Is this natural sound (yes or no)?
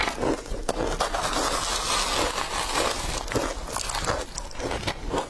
yes